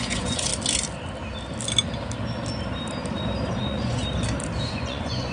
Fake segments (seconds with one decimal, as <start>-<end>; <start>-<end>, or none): 0.0-0.5; 3.6-4.0; 4.7-5.3